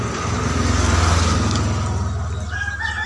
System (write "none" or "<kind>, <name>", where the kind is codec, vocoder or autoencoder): none